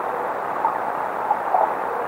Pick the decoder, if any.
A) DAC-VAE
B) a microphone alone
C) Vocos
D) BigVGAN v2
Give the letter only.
B